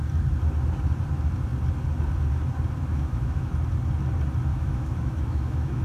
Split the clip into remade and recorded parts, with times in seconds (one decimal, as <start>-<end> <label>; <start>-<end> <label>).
0.0-2.9 recorded; 2.9-3.5 remade; 3.5-4.5 recorded; 4.5-5.8 remade